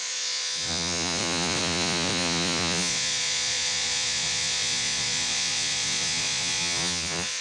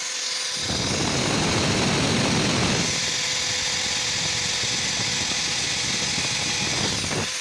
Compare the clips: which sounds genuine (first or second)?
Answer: second